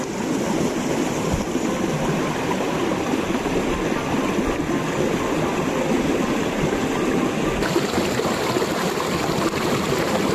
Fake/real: real